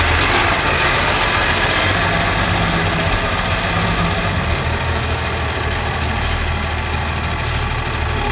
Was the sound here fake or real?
real